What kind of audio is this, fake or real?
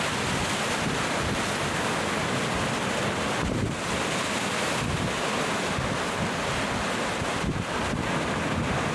real